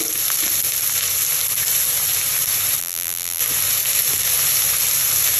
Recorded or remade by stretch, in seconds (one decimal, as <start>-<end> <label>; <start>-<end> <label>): 0.0-2.8 recorded; 2.8-3.4 remade; 3.4-5.4 recorded